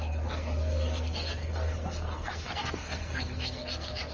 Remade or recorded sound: remade